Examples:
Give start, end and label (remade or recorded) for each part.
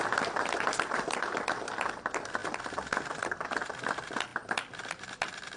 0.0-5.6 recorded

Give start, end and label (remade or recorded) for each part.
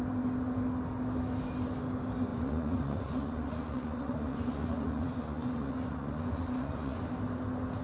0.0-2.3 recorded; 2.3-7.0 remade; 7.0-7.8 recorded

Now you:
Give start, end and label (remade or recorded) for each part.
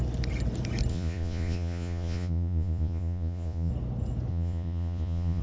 0.0-0.9 recorded; 0.9-3.7 remade; 3.7-4.3 recorded; 4.3-5.4 remade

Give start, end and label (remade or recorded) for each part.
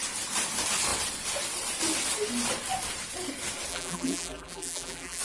0.0-3.7 recorded; 3.7-5.2 remade